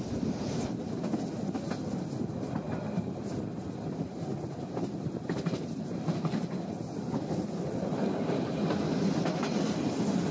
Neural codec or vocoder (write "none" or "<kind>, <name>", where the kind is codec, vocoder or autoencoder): none